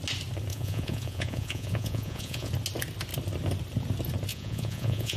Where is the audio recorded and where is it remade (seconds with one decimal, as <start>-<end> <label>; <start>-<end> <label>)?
0.0-0.5 recorded; 0.5-2.5 remade; 2.5-4.3 recorded; 4.3-5.2 remade

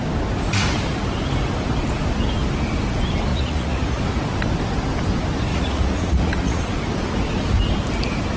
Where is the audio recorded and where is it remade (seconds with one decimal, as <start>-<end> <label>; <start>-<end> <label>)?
0.0-3.3 recorded; 3.3-4.0 remade; 4.0-5.5 recorded; 5.5-6.6 remade; 6.6-8.4 recorded